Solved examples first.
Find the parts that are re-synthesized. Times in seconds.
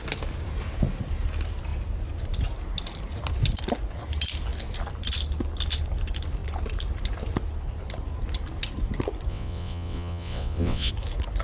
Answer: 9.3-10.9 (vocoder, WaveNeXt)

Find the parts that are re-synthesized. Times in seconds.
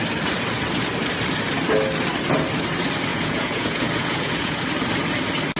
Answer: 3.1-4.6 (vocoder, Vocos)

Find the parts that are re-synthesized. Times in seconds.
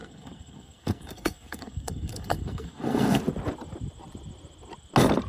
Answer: 0.0-3.2 (codec, SNAC)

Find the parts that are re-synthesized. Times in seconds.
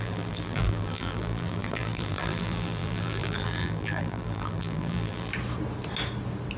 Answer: 0.0-5.3 (vocoder, BigVGAN v2)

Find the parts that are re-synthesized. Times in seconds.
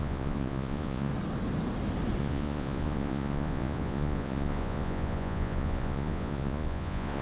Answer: 0.0-1.1 (vocoder, Vocos); 2.2-7.2